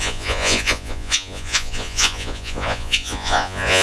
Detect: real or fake fake